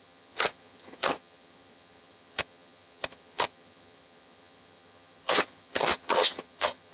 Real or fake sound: fake